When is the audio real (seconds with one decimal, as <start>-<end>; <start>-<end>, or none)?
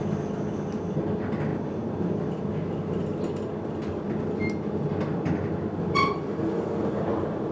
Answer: 0.0-1.5; 2.2-7.5